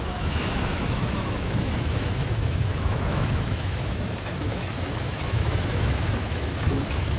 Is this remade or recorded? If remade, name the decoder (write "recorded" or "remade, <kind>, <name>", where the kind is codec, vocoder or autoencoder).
remade, autoencoder, DAC-VAE